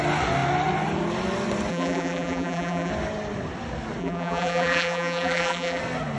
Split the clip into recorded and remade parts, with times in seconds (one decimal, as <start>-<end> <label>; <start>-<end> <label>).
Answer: 0.0-1.7 recorded; 1.7-2.9 remade; 2.9-4.0 recorded; 4.0-5.8 remade; 5.8-6.2 recorded